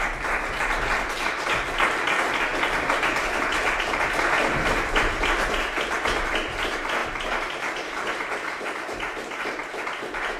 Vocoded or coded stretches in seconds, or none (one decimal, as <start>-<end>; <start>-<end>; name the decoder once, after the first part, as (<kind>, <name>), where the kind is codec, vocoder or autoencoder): 0.0-9.6 (vocoder, BigVGAN v2)